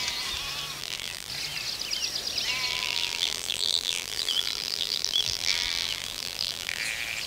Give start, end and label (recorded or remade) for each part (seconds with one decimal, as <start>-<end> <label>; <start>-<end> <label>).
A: 0.0-0.8 recorded; 0.8-1.3 remade; 1.3-2.7 recorded; 2.7-6.8 remade; 6.8-7.3 recorded